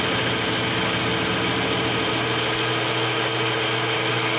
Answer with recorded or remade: recorded